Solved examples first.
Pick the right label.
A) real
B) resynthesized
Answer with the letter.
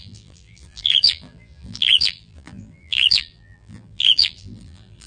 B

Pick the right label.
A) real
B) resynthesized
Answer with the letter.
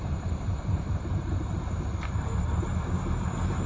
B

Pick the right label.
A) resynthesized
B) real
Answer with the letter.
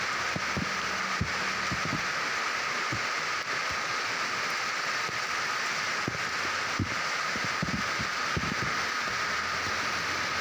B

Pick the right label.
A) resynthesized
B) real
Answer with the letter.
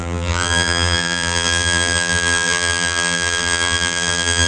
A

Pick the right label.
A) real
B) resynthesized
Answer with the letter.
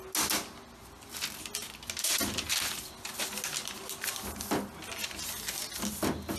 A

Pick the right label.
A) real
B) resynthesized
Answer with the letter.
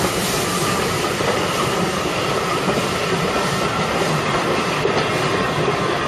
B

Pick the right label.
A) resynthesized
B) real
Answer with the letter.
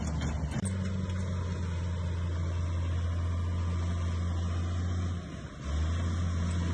B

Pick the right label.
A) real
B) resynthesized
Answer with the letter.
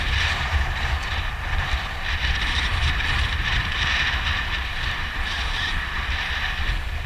B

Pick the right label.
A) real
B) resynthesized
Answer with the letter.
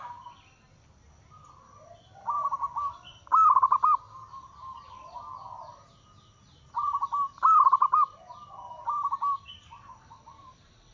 A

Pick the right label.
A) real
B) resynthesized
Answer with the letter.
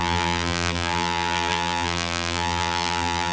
B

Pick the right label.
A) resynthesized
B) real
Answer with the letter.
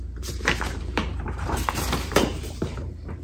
A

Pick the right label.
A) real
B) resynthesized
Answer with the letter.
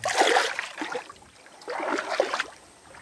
B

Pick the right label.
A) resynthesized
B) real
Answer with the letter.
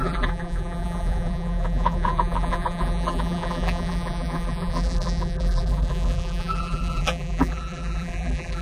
A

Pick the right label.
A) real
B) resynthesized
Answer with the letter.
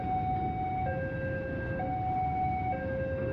A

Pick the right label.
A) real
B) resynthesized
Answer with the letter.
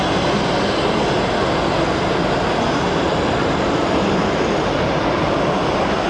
B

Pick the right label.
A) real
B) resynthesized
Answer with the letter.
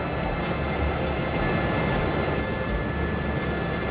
A